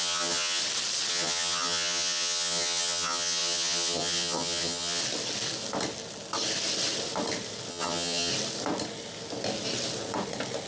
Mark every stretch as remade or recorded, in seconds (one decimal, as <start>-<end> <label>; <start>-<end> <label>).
0.0-0.6 remade; 0.6-1.1 recorded; 1.1-5.0 remade; 5.0-7.7 recorded; 7.7-8.3 remade; 8.3-10.7 recorded